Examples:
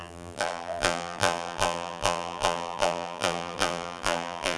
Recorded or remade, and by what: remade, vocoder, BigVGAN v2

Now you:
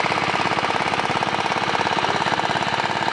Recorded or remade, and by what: recorded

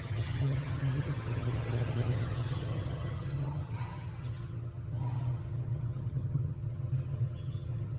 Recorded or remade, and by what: remade, vocoder, HiFi-GAN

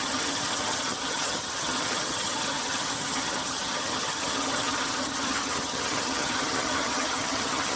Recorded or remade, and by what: remade, vocoder, HiFi-GAN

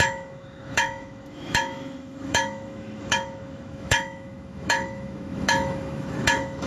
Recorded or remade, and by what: remade, autoencoder, DAC-VAE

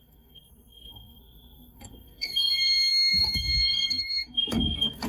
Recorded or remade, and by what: remade, codec, SNAC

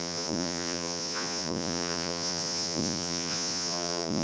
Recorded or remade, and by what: remade, vocoder, Vocos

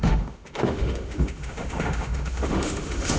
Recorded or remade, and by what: remade, autoencoder, DAC-VAE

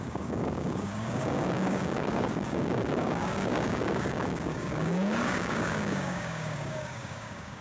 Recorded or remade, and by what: remade, codec, DAC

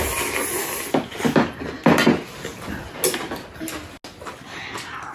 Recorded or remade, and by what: recorded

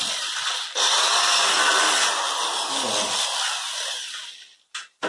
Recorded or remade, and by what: recorded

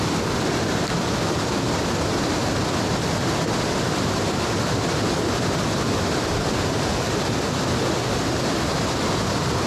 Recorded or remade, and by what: recorded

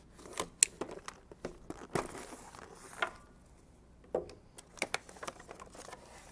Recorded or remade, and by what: recorded